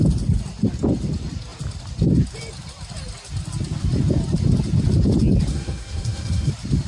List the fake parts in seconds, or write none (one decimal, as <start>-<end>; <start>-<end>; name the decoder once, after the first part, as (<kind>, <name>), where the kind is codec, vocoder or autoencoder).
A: 5.5-6.5 (codec, SNAC)